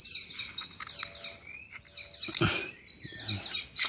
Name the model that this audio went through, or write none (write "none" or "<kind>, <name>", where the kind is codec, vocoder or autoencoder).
none